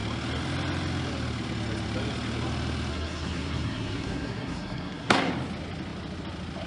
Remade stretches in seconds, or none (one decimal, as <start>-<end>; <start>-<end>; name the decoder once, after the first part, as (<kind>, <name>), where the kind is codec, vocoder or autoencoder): 2.9-5.3 (codec, SNAC)